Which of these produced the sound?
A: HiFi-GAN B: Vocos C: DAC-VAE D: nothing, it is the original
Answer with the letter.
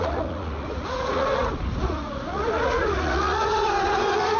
B